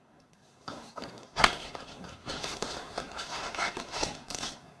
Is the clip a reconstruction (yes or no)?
yes